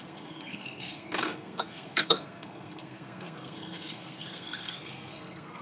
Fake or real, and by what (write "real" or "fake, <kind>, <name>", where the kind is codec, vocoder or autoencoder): fake, codec, SNAC